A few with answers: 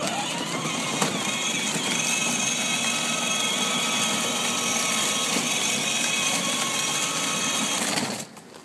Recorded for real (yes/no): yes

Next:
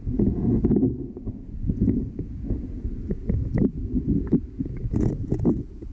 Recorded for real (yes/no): no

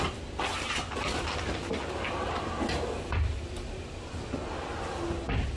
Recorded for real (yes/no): yes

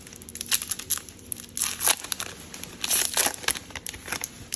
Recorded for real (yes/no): yes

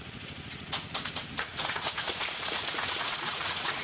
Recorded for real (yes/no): no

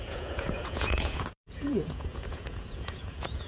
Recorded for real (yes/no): no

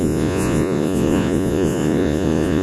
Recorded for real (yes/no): no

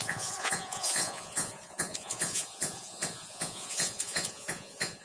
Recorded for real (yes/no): no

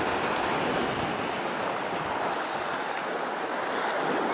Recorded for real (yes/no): yes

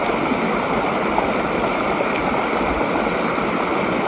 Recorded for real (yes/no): yes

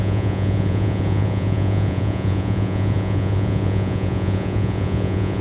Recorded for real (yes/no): no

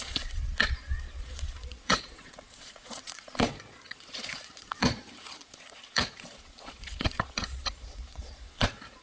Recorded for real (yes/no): no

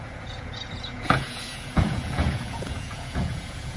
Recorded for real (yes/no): no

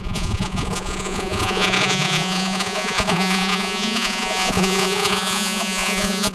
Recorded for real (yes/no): no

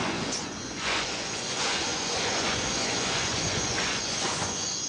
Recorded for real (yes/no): no